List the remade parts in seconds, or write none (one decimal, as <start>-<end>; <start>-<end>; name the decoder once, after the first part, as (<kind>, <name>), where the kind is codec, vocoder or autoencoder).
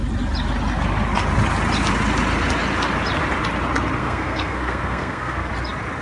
4.0-5.5 (codec, SNAC)